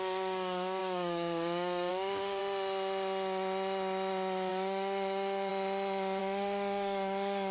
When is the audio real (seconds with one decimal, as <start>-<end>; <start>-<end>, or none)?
2.4-4.5; 5.5-6.2